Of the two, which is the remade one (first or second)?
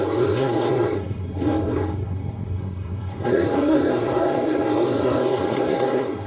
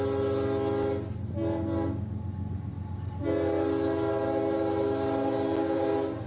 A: first